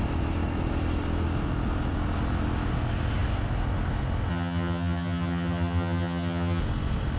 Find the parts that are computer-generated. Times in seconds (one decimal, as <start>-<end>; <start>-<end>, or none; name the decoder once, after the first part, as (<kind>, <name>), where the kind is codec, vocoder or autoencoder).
4.3-6.6 (vocoder, HiFi-GAN)